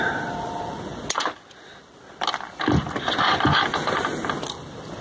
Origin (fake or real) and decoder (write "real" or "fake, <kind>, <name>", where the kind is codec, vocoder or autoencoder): real